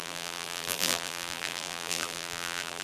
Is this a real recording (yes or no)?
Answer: no